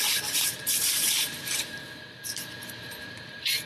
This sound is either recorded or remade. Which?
remade